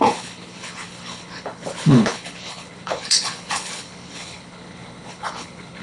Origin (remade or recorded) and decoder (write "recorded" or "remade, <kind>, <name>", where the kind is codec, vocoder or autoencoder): remade, codec, HILCodec